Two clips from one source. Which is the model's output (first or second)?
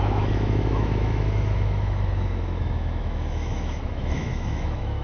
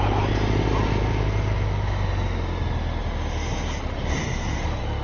first